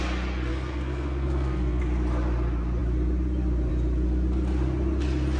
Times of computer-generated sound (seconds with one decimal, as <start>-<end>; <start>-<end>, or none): 0.5-1.8